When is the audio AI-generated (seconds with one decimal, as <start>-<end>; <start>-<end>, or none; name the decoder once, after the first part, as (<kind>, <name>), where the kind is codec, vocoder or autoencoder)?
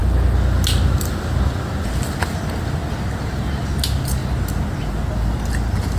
none